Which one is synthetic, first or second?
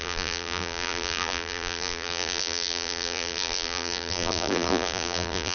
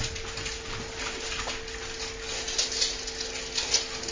first